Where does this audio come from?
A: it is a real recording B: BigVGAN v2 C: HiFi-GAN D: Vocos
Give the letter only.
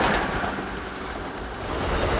A